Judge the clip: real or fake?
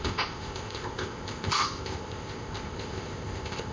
fake